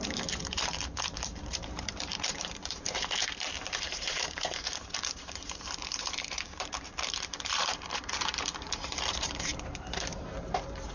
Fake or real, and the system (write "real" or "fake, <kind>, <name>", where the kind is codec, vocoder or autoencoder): fake, vocoder, BigVGAN v2